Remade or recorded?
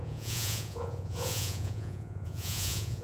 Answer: remade